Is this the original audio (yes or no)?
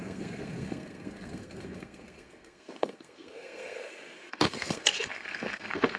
no